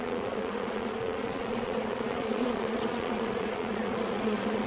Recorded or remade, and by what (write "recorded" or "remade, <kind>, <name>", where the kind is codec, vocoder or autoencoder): remade, vocoder, Vocos